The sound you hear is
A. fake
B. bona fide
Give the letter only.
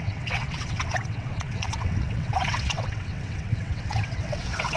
A